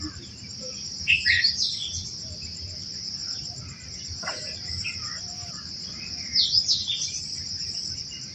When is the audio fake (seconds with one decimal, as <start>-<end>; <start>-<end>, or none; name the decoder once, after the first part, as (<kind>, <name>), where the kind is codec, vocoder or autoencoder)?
0.0-1.7 (vocoder, BigVGAN v2); 2.4-8.3